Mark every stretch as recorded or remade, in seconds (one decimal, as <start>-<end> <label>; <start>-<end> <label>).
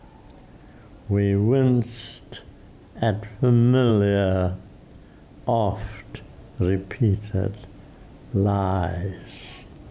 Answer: 0.0-9.9 recorded